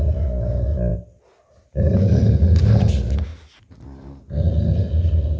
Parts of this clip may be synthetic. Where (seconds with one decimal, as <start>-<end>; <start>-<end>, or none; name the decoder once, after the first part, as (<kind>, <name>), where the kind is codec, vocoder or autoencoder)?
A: none